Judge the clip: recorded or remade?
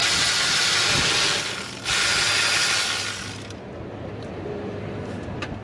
recorded